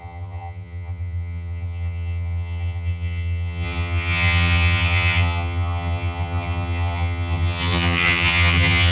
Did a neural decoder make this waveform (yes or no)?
yes